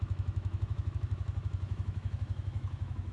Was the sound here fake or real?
fake